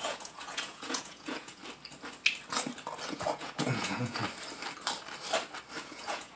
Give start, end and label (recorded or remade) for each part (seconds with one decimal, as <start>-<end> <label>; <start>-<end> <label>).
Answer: 0.0-1.6 remade; 1.6-3.1 recorded; 3.1-4.2 remade; 4.2-5.8 recorded; 5.8-6.4 remade